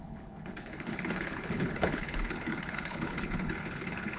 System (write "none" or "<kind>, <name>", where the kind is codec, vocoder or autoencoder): codec, HILCodec